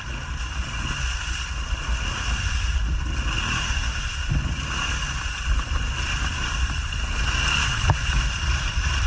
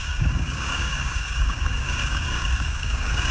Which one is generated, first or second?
second